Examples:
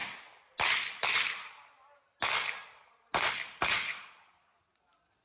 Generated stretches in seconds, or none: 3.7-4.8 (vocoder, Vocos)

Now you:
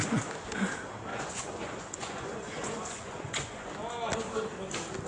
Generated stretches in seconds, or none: 1.1-3.7 (vocoder, Vocos)

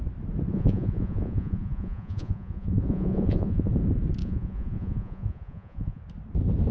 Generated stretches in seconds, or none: 0.5-3.7 (vocoder, Vocos); 4.2-6.0

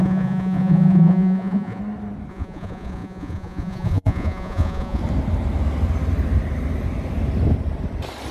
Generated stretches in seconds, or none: 0.0-1.8 (vocoder, Vocos); 2.3-5.0

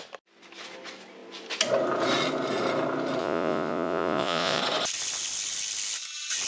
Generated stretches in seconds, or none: 3.2-4.6 (vocoder, Vocos)

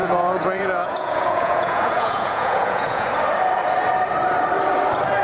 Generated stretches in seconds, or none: 0.0-3.1 (vocoder, Vocos)

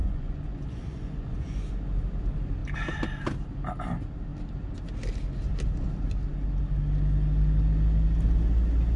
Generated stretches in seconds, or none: 0.0-1.7 (vocoder, Vocos)

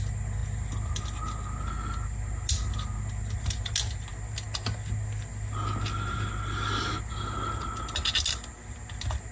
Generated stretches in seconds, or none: none